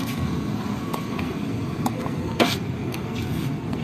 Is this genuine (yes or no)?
no